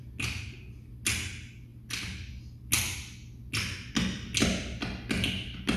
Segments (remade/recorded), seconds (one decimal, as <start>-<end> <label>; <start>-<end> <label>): 0.0-5.8 recorded